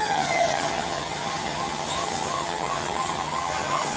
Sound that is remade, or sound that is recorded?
remade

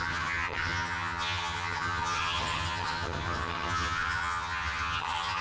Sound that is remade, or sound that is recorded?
remade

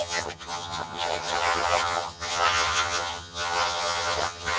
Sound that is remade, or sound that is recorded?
remade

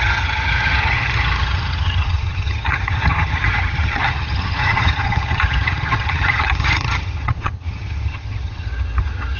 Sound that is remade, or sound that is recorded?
remade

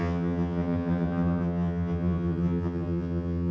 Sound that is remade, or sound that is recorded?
remade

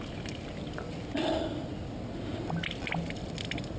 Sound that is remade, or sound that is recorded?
recorded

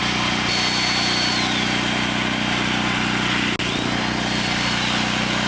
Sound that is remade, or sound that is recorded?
recorded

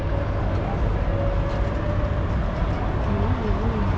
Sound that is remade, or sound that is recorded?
recorded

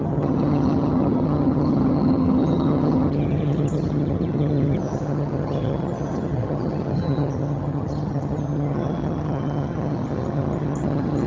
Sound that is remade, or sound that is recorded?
remade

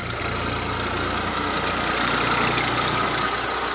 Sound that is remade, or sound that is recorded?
recorded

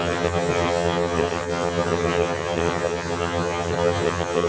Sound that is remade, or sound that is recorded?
remade